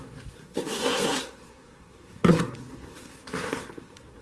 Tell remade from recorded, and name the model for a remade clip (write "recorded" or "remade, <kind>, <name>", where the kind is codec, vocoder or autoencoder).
remade, codec, SNAC